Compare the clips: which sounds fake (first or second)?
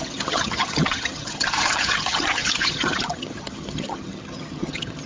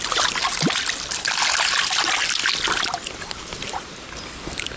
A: first